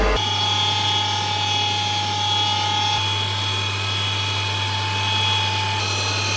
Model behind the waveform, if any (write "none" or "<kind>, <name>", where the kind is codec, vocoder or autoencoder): none